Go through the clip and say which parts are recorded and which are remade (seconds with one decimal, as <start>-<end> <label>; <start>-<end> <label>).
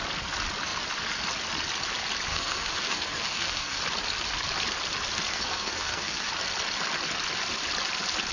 0.0-2.3 recorded; 2.3-3.8 remade; 3.8-5.3 recorded; 5.3-6.3 remade; 6.3-8.3 recorded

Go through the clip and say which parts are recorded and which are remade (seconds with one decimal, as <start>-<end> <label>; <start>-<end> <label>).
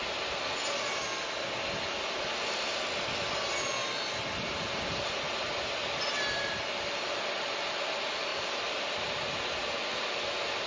0.0-10.7 recorded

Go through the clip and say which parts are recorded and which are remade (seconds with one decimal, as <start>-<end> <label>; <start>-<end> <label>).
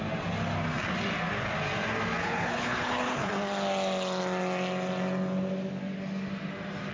0.0-2.2 recorded; 2.2-3.3 remade; 3.3-6.9 recorded